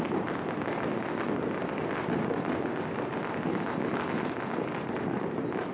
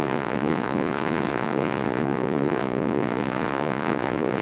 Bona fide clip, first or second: first